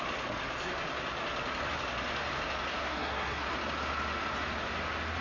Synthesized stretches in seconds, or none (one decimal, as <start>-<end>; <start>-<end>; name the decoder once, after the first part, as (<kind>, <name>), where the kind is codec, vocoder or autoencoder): 2.7-3.5 (codec, SNAC)